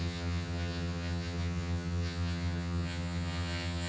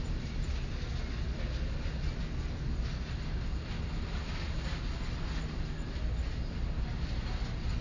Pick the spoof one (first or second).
first